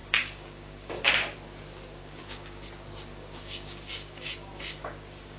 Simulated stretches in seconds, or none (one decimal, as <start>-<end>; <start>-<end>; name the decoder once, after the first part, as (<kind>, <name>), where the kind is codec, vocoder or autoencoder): 0.0-1.1 (codec, DAC); 2.0-2.7; 3.1-5.4